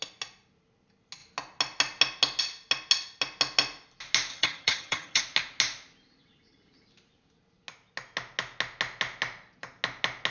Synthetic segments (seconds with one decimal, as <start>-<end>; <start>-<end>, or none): 4.3-5.2